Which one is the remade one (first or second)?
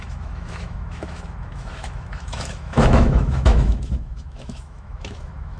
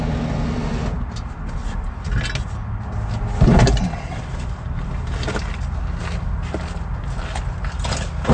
first